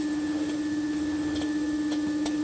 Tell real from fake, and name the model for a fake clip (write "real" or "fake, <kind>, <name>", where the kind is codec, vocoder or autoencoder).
real